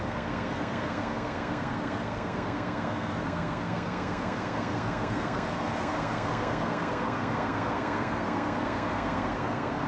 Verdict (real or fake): fake